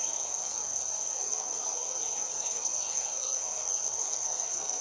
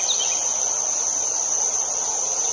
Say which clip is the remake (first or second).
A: first